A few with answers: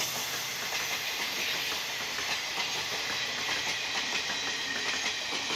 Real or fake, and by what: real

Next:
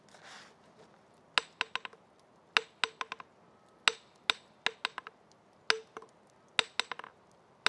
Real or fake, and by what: real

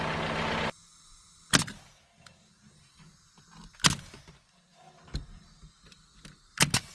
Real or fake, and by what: real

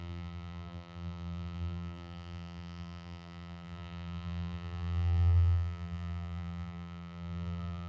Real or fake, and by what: fake, vocoder, BigVGAN v2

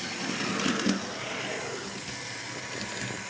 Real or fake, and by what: real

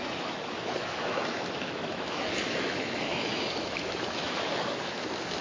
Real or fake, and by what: fake, autoencoder, DAC-VAE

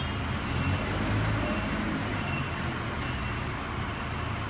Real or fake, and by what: real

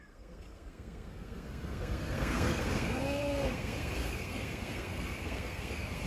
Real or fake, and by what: fake, codec, SNAC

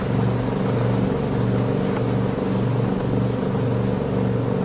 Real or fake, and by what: real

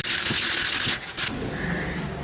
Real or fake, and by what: real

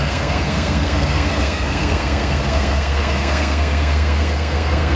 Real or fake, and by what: fake, codec, SNAC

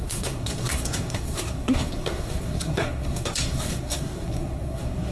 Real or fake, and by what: fake, codec, SNAC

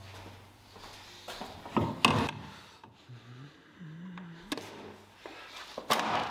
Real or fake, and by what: real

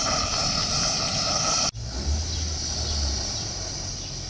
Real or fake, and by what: real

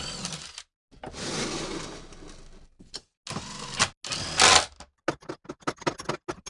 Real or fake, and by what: real